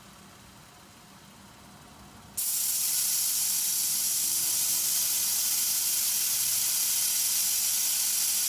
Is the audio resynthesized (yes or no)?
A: no